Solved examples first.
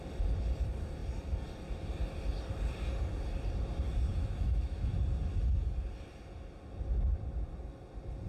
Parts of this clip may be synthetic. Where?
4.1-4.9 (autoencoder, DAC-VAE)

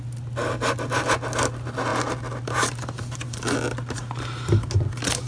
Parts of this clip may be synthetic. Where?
none

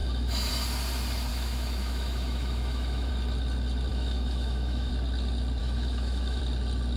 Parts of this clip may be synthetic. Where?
0.0-0.5 (autoencoder, DAC-VAE); 1.3-3.1; 3.9-4.9; 5.6-6.4